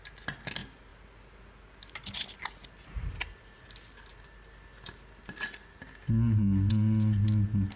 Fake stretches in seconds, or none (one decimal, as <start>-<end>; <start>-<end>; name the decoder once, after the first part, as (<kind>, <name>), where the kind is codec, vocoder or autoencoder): none